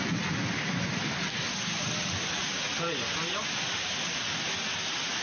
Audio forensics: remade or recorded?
recorded